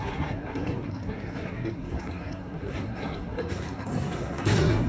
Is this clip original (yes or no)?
no